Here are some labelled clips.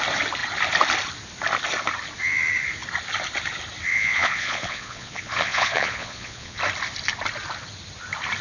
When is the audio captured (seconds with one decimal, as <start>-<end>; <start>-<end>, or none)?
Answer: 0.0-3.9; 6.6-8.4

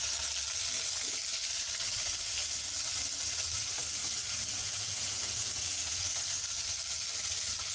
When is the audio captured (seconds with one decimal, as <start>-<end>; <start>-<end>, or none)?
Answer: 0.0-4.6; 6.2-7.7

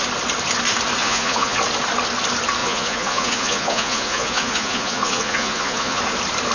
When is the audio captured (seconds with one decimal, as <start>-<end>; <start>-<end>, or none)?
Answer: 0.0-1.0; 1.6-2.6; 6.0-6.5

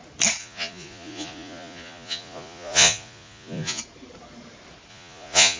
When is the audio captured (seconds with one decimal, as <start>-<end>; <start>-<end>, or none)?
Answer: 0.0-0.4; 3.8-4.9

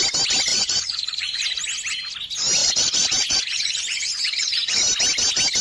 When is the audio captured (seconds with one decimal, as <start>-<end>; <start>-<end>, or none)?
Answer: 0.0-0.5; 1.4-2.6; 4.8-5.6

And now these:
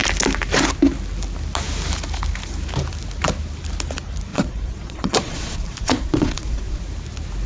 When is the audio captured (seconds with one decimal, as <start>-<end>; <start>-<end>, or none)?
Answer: 0.0-4.3; 6.8-7.5

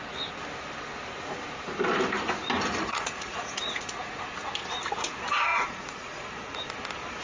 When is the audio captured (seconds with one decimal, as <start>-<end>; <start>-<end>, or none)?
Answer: 0.0-2.7; 4.2-5.5; 6.6-7.2

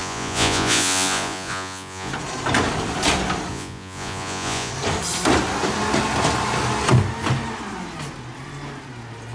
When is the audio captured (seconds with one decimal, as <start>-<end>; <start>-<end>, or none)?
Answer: 2.1-3.5; 4.7-9.3